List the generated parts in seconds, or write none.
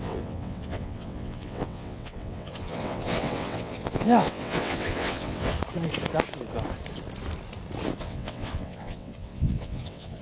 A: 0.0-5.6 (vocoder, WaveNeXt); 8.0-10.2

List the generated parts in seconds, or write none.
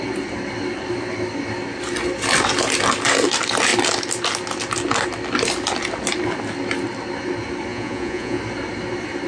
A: 7.7-8.4 (vocoder, Vocos)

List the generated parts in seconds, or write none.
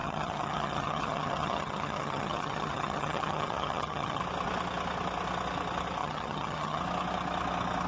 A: 0.0-4.2 (vocoder, HiFi-GAN); 6.0-6.8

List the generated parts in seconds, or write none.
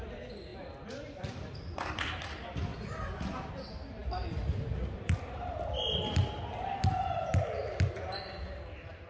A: 2.7-3.5 (vocoder, BigVGAN v2)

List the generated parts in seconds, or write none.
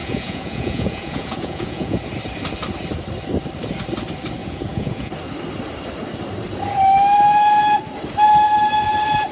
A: 0.0-2.0 (vocoder, Vocos); 4.4-5.1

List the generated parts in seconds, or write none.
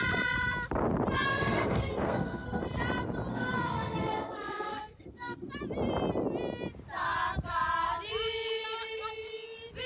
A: 1.3-2.6 (codec, SNAC); 3.3-5.5